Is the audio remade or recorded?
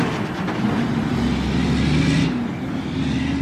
recorded